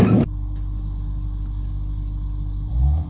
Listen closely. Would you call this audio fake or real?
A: real